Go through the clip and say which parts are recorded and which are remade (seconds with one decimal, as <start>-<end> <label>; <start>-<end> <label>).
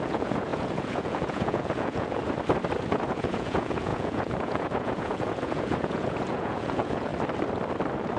0.0-2.2 remade; 2.2-2.9 recorded; 2.9-7.1 remade; 7.1-8.2 recorded